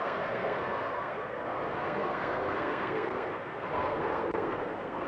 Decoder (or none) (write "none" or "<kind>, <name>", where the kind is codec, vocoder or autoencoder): codec, SNAC